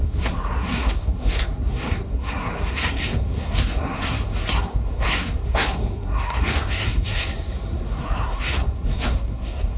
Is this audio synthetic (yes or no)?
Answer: yes